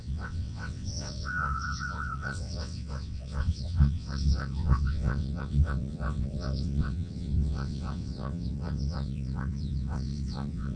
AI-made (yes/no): yes